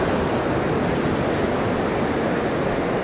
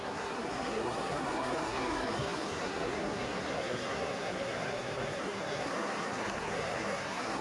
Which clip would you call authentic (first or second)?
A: first